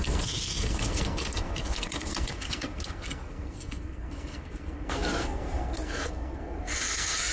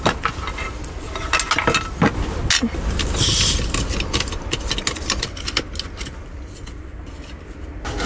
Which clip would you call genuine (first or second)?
second